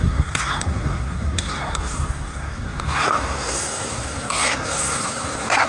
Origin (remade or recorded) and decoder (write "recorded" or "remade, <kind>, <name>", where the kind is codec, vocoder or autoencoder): remade, codec, SNAC